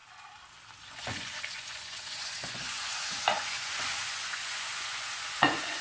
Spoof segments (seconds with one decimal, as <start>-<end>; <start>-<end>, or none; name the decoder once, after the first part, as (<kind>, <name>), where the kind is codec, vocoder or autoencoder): 0.8-5.8 (vocoder, Vocos)